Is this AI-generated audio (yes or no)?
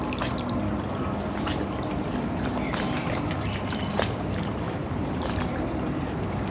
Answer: yes